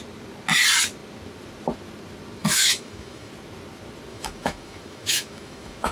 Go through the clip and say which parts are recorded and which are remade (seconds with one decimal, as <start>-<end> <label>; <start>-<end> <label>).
0.0-2.4 recorded; 2.4-3.3 remade; 3.3-4.1 recorded; 4.1-5.9 remade